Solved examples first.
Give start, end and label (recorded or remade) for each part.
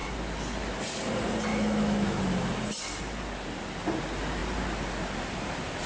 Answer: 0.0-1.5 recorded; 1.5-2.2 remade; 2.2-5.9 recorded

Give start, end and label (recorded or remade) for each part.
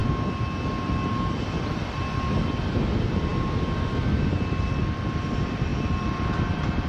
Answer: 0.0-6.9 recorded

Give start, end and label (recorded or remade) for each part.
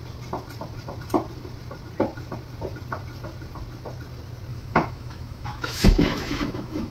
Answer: 0.0-4.5 recorded; 4.5-6.9 remade